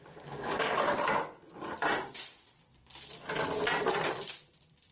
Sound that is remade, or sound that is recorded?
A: remade